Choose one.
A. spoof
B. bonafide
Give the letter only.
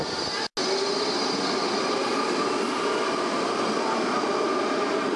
B